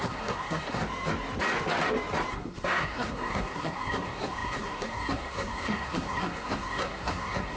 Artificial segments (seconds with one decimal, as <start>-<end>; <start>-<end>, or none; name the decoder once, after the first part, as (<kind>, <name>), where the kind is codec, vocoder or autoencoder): 0.0-0.8 (codec, SNAC); 2.3-7.6